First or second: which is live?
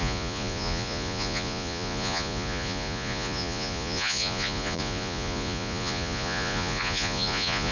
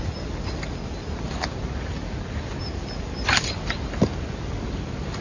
second